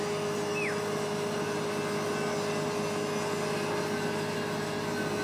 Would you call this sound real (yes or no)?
yes